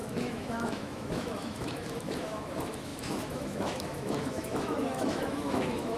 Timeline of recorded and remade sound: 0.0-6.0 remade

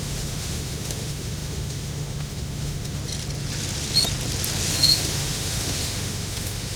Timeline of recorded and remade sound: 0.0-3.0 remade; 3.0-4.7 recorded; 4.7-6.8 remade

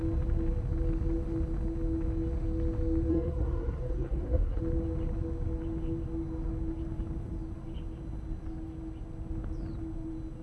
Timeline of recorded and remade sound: 0.0-3.1 recorded; 3.1-4.6 remade; 4.6-10.4 recorded

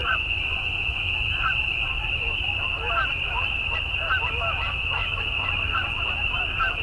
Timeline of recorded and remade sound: 0.0-2.7 remade; 2.7-5.0 recorded; 5.0-6.1 remade; 6.1-6.8 recorded

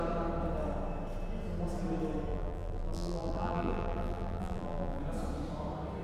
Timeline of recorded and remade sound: 0.0-2.3 recorded; 2.3-5.0 remade; 5.0-6.0 recorded